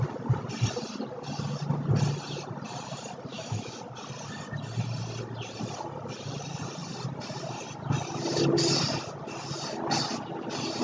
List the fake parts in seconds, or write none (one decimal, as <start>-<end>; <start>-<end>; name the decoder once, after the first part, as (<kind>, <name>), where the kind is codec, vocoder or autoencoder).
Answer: 3.3-3.8 (autoencoder, DAC-VAE)